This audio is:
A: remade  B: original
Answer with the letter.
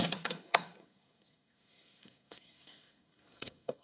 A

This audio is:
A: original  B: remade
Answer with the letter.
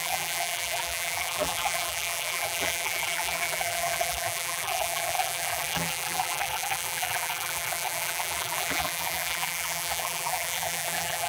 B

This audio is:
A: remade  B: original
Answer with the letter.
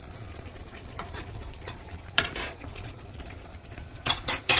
A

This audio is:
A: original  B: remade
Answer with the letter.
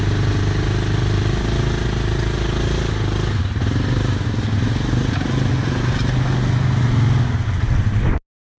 A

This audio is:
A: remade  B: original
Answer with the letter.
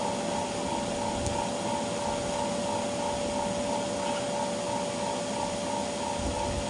B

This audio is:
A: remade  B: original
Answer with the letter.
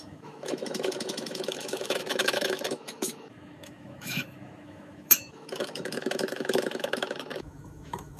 A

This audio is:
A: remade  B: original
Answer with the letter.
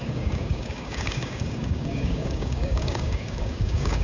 A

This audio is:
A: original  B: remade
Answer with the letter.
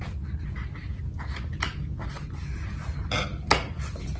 A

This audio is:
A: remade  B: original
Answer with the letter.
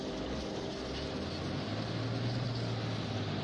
B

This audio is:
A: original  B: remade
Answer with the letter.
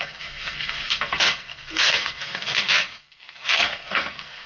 B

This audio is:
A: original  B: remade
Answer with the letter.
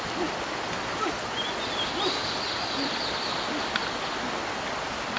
A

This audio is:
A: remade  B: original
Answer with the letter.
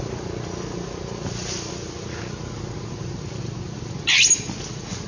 B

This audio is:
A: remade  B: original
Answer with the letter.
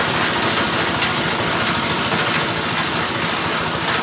B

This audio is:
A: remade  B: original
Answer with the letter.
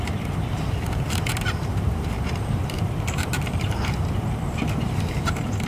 A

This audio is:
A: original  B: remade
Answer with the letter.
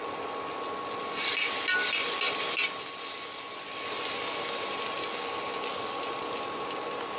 A